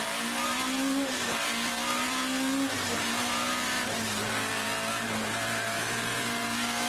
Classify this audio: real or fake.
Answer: fake